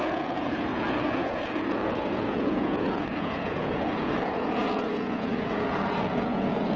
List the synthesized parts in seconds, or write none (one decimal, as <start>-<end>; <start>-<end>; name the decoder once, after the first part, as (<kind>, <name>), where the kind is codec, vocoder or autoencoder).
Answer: 0.0-6.8 (vocoder, Vocos)